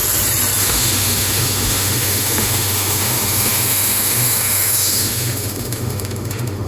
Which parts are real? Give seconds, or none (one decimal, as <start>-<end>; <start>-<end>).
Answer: 0.0-0.6